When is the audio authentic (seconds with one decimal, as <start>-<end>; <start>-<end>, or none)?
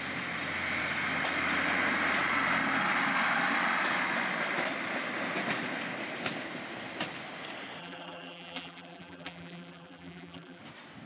0.0-7.8; 10.6-11.1